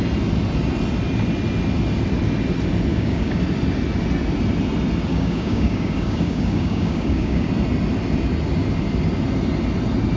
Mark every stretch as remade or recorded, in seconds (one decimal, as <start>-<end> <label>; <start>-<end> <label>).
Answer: 0.0-2.9 recorded; 2.9-3.4 remade; 3.4-5.1 recorded; 5.1-7.5 remade; 7.5-10.2 recorded